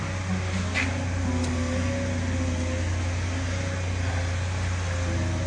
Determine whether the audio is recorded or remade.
recorded